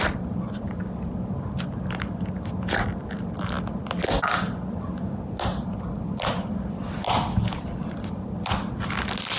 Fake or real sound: real